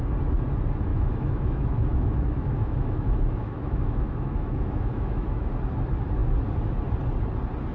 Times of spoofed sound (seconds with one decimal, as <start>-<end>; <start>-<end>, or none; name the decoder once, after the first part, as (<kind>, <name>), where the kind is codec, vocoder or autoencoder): 0.9-5.5 (autoencoder, DAC-VAE)